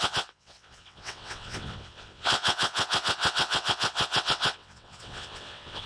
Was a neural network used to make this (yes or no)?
yes